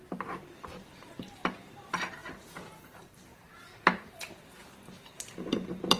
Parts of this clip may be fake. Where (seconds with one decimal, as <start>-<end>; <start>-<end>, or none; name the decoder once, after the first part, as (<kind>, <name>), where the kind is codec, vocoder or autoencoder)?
0.0-6.0 (vocoder, BigVGAN v2)